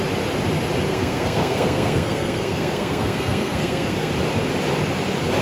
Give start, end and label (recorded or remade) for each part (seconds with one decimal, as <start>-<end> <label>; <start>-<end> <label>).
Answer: 0.0-0.9 recorded; 0.9-4.1 remade; 4.1-5.4 recorded